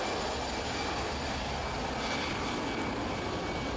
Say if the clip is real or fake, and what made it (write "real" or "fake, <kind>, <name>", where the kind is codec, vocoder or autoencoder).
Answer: real